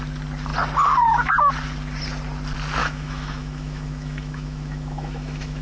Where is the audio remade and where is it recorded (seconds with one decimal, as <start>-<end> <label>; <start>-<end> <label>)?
0.0-2.8 recorded; 2.8-5.6 remade